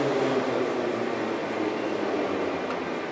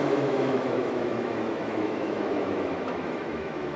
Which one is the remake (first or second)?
second